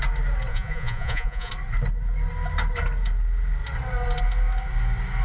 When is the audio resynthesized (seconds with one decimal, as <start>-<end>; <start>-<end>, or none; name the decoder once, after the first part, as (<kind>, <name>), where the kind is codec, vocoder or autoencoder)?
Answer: 0.5-1.5 (vocoder, Vocos)